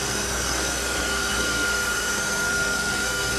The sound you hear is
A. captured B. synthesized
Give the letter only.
B